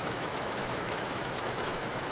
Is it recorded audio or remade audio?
remade